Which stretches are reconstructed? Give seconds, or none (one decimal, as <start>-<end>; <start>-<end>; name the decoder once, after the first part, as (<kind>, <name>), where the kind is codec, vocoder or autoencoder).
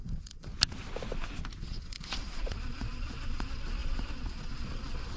0.0-0.5 (vocoder, Vocos); 1.6-5.2